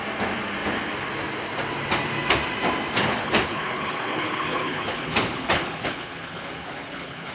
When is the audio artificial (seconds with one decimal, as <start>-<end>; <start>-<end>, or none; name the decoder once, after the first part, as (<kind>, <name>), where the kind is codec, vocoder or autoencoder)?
3.0-7.3 (codec, HILCodec)